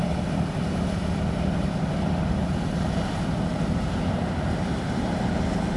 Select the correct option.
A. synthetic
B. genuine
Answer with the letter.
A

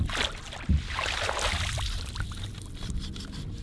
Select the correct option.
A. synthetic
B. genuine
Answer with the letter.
B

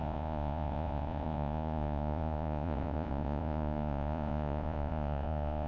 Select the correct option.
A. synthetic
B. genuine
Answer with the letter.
A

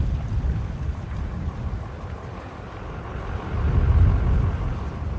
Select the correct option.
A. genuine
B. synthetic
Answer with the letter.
A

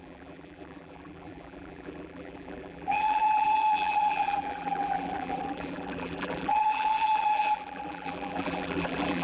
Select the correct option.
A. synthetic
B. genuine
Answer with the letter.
A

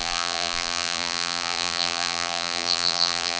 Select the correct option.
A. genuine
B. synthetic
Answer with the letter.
B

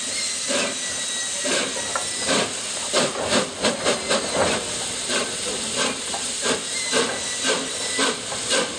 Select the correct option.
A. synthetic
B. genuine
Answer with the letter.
B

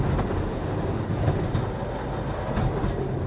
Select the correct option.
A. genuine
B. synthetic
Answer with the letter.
A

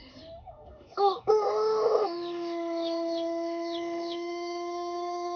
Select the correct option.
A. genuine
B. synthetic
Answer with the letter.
B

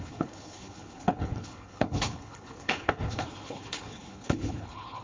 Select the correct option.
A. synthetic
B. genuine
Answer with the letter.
A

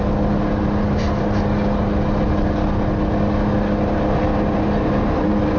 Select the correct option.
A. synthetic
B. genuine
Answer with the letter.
B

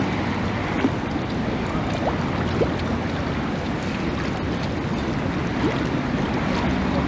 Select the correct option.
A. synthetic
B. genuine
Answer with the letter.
B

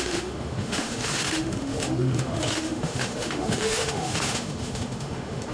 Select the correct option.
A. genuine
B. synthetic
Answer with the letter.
B